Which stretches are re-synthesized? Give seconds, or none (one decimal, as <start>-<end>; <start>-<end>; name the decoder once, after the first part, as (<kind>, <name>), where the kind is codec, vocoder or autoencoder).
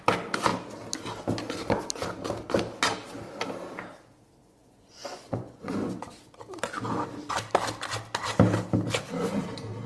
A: 4.4-6.0 (vocoder, Vocos)